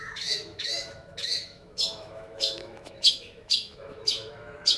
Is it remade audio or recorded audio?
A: remade